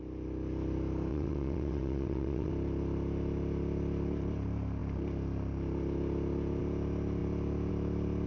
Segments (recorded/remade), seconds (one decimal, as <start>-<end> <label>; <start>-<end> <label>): 0.0-1.1 recorded; 1.1-2.5 remade; 2.5-8.3 recorded